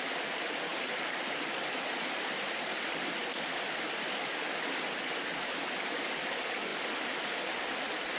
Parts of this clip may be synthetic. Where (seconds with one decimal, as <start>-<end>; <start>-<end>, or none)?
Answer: 0.7-4.6